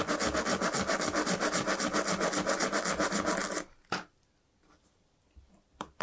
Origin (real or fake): real